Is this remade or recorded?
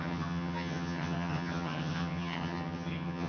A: remade